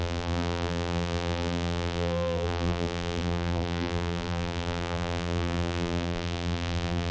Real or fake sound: fake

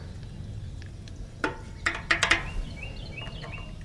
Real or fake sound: real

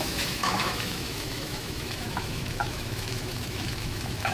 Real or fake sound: fake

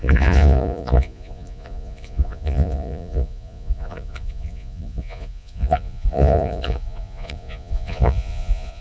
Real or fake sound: fake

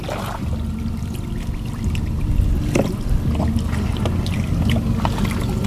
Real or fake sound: real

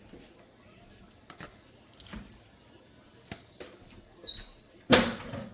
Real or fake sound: real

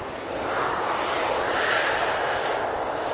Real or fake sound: real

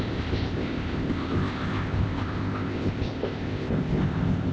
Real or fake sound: fake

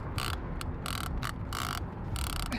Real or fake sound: real